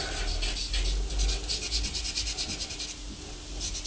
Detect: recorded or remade recorded